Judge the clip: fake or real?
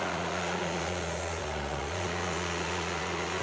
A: fake